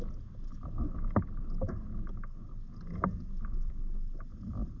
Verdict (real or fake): real